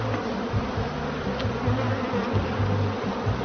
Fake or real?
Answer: real